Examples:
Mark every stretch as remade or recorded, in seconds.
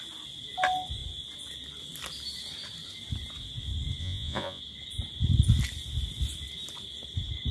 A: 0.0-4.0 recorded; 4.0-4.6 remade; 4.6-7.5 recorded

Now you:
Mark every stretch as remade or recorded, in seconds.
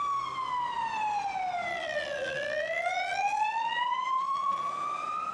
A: 0.0-1.7 recorded; 1.7-4.7 remade; 4.7-5.3 recorded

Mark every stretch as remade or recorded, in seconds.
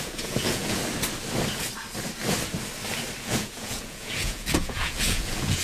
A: 0.0-0.8 remade; 0.8-3.2 recorded; 3.2-5.6 remade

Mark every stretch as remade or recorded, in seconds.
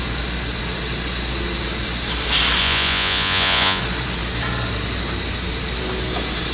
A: 0.0-2.6 recorded; 2.6-3.8 remade; 3.8-6.5 recorded